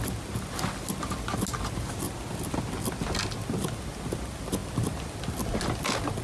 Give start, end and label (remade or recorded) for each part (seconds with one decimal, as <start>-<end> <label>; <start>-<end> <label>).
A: 0.0-6.2 recorded